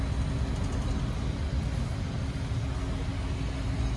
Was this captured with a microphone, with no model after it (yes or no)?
yes